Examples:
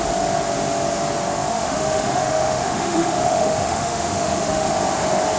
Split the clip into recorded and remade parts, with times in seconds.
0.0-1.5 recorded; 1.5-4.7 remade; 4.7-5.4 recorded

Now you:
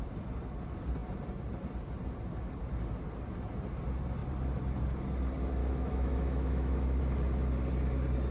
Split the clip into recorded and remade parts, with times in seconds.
0.0-5.6 recorded; 5.6-7.0 remade; 7.0-8.3 recorded

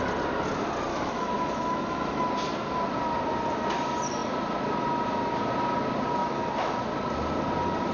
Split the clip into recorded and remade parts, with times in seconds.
0.0-0.9 recorded; 0.9-2.3 remade; 2.3-6.2 recorded; 6.2-6.8 remade; 6.8-7.9 recorded

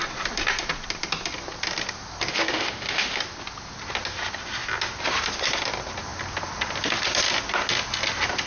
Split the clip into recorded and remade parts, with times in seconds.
0.0-2.3 recorded; 2.3-3.2 remade; 3.2-8.5 recorded

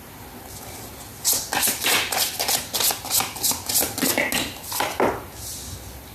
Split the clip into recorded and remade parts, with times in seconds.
0.0-6.1 recorded

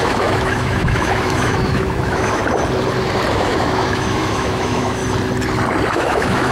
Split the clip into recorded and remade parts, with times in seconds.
0.0-2.4 remade; 2.4-3.3 recorded; 3.3-5.0 remade; 5.0-5.9 recorded; 5.9-6.5 remade